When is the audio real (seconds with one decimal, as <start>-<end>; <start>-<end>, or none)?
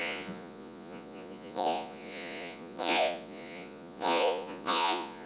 none